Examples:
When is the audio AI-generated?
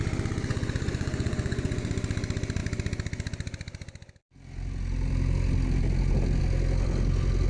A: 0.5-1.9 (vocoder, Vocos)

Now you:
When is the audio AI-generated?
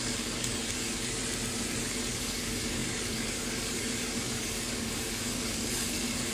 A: 0.0-1.2 (codec, DAC); 1.8-6.3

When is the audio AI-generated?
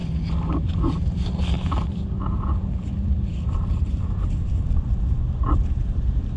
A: 0.0-6.4 (vocoder, BigVGAN v2)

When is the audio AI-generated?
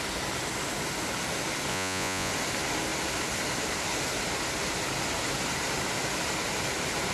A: 1.7-2.3 (vocoder, Vocos)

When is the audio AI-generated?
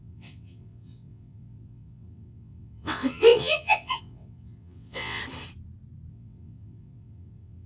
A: 0.0-5.2 (vocoder, WaveNeXt); 6.1-7.7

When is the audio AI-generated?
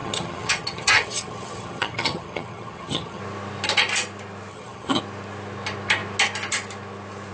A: 0.0-3.2 (vocoder, HiFi-GAN); 4.5-5.0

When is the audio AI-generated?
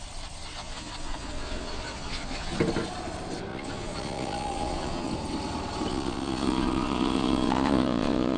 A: 0.6-2.6 (vocoder, Vocos); 3.5-5.1; 5.9-8.4